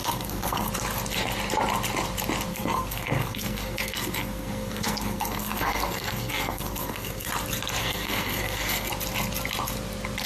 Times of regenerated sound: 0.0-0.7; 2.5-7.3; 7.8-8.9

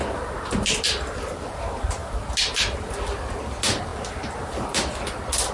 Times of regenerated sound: none

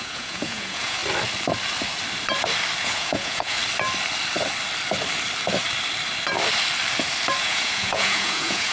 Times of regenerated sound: 0.0-1.0; 2.8-3.6; 7.4-8.7